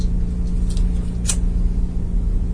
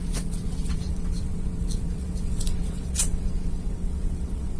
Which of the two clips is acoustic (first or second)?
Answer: first